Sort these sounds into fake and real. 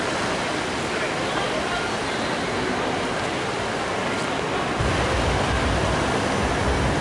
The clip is real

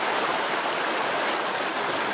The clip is fake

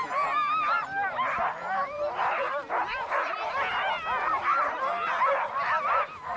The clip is real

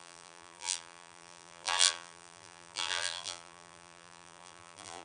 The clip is fake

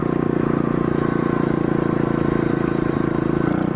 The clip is real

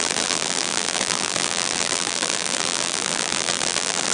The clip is fake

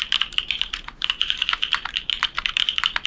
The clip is fake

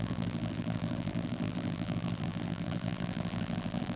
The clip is fake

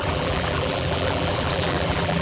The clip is fake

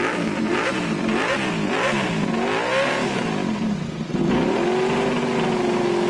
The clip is real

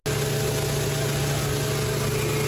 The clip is real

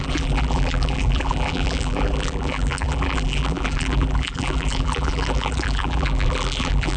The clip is fake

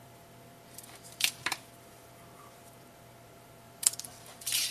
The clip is fake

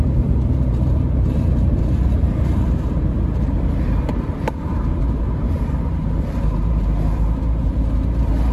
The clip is fake